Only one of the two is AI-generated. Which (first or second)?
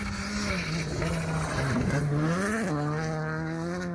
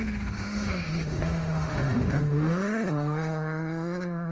second